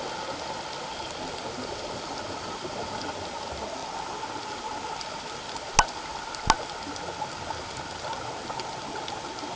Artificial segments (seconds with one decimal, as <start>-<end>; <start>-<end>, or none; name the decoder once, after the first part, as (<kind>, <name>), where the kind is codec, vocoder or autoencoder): none